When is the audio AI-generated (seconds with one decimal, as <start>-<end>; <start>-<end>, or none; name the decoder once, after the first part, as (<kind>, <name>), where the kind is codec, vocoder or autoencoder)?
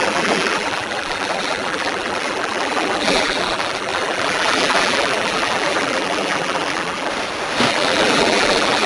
0.0-7.1 (vocoder, BigVGAN v2); 7.7-8.9